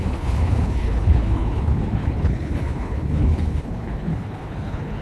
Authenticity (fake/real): fake